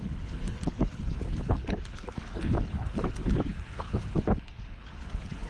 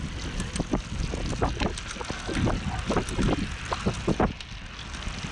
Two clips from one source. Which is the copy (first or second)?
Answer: first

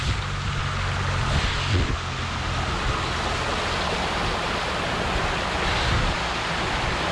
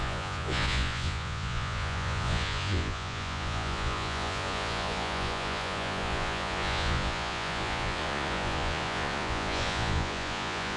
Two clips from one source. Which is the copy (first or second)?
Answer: second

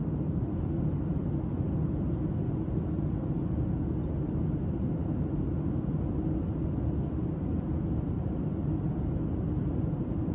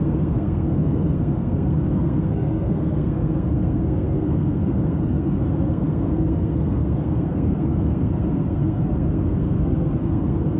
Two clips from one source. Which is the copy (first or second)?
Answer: second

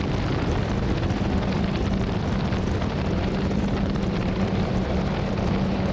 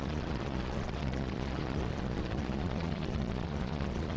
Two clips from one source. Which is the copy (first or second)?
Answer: second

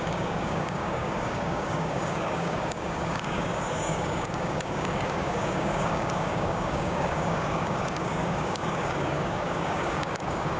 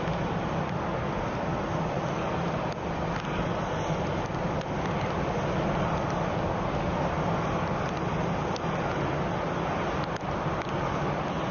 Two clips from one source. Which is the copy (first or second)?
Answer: first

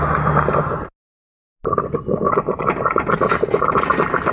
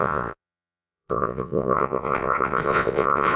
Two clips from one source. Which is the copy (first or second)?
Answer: second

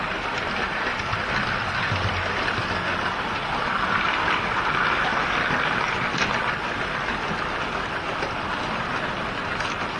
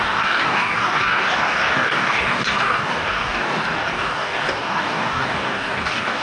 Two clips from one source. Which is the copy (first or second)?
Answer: second